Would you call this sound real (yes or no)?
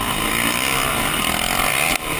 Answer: yes